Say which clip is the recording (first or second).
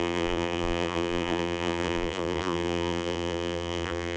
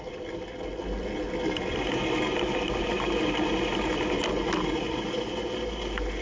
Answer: second